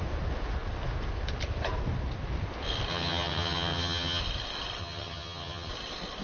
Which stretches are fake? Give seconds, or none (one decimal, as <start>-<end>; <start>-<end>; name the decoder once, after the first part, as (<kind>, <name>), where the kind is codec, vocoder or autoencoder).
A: 2.9-4.2 (vocoder, HiFi-GAN); 4.8-5.7